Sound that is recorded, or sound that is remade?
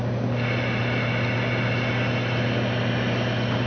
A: recorded